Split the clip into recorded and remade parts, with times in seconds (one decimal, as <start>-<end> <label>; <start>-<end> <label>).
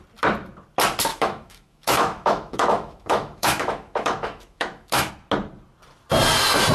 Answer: 0.0-1.1 recorded; 1.1-5.1 remade; 5.1-6.7 recorded